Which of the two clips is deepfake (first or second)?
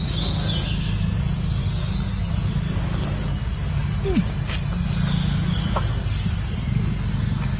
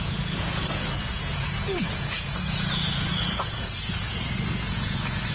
second